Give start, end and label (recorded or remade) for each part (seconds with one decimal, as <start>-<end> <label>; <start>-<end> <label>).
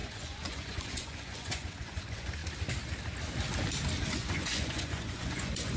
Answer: 0.0-2.4 remade; 2.4-4.1 recorded; 4.1-5.8 remade